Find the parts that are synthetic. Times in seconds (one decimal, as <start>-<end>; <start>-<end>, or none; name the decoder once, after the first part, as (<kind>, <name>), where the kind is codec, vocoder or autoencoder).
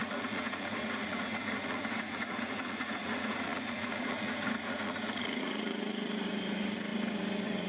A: 0.0-7.7 (vocoder, Vocos)